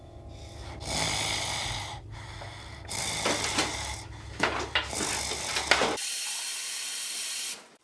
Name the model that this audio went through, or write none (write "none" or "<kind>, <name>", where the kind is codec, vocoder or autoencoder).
none